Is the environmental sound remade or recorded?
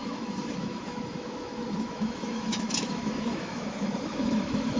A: remade